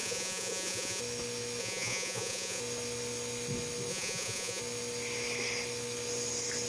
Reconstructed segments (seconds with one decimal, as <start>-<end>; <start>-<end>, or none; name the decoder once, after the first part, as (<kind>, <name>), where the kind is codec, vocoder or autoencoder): 0.0-1.0 (vocoder, Vocos); 1.6-2.6; 3.9-4.6